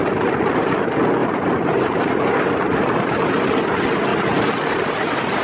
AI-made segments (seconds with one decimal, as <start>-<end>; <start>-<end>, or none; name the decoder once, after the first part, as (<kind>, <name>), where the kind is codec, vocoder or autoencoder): 0.0-0.7 (vocoder, BigVGAN v2); 1.2-3.6; 4.1-5.4